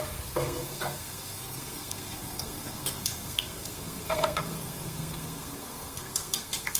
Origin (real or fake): fake